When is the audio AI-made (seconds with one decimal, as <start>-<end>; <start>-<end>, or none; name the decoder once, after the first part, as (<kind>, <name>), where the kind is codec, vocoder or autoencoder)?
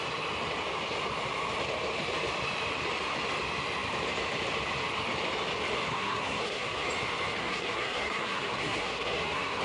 5.9-6.9 (codec, SNAC); 7.4-9.6